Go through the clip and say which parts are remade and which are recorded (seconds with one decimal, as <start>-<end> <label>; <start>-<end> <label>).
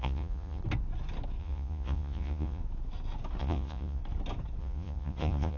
0.0-0.6 remade; 0.6-1.4 recorded; 1.4-2.6 remade; 2.6-3.4 recorded; 3.4-4.0 remade; 4.0-4.6 recorded; 4.6-5.6 remade